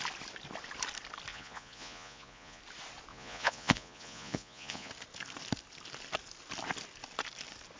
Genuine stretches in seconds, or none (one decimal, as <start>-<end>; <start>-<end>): 0.0-1.3; 2.6-3.1; 4.9-7.8